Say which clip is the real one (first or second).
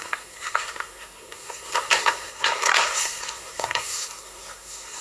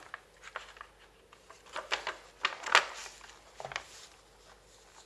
second